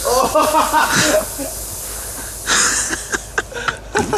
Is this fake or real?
fake